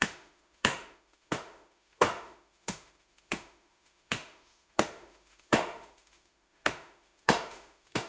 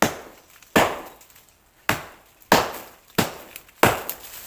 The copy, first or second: first